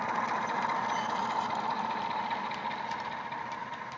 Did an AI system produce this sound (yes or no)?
no